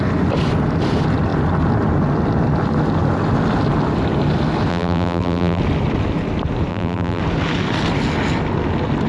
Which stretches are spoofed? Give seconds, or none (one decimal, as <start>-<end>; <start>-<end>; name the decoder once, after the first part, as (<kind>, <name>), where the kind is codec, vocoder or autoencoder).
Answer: 4.7-5.6 (vocoder, BigVGAN v2); 6.7-7.2